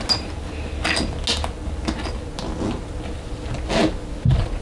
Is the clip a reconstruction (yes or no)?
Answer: no